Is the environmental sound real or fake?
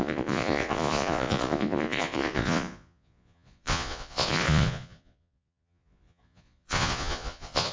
fake